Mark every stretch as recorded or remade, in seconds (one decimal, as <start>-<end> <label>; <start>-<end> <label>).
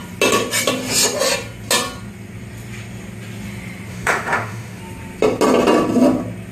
0.0-3.9 recorded; 3.9-4.8 remade; 4.8-6.5 recorded